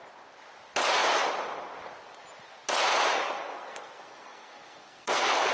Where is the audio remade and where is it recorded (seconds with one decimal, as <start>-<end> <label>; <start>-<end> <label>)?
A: 0.0-3.1 recorded; 3.1-5.5 remade